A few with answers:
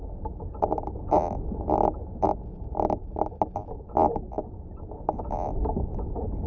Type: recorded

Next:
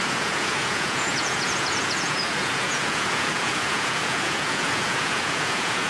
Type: remade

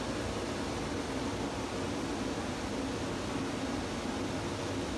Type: recorded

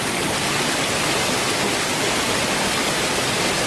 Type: recorded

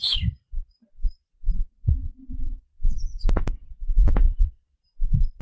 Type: remade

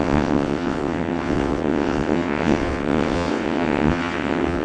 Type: remade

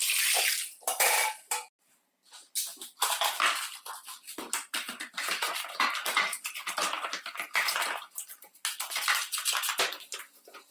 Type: recorded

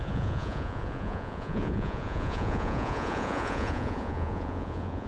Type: remade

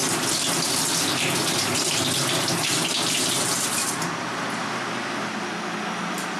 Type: recorded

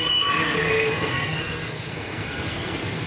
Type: remade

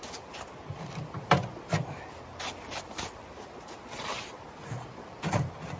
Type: recorded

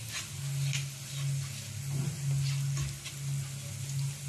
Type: recorded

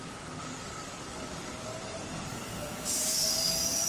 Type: remade